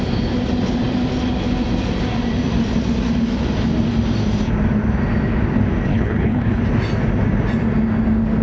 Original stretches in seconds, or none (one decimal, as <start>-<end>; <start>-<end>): 0.0-5.9; 6.6-8.4